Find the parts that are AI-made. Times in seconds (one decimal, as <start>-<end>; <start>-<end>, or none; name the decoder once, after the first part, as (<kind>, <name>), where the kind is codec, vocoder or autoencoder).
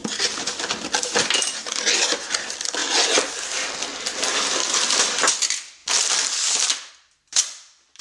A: 0.0-1.6 (vocoder, BigVGAN v2)